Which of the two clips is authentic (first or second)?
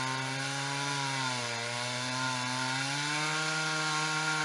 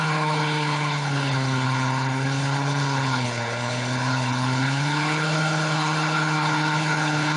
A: first